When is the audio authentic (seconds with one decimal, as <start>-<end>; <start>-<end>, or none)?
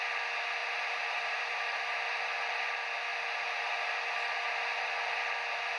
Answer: 0.0-0.6; 2.2-5.8